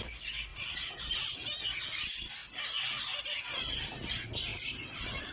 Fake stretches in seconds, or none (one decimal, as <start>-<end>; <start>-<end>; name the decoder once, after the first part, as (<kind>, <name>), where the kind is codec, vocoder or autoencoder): 0.5-1.6 (vocoder, BigVGAN v2); 4.5-5.3